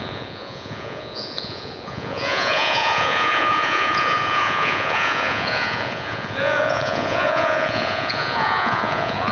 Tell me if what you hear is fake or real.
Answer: fake